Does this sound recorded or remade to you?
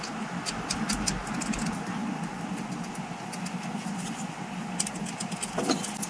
recorded